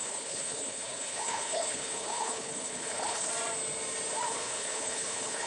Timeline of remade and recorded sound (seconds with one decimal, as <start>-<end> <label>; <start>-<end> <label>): 0.0-3.3 remade; 3.3-4.3 recorded; 4.3-5.5 remade